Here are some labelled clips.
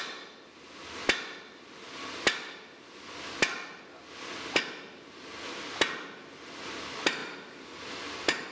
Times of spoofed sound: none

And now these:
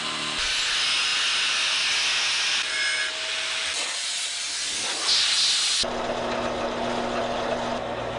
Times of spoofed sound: none

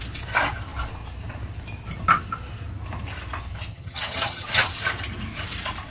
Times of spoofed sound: 3.7-4.8 (vocoder, HiFi-GAN)

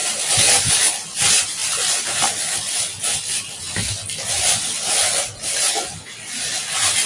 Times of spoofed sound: none

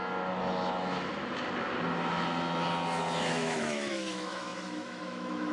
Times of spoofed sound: 3.3-5.5 (autoencoder, DAC-VAE)